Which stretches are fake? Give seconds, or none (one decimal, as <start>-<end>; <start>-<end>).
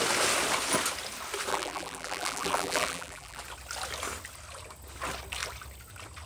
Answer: 1.5-3.4